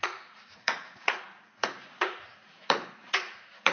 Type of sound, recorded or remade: remade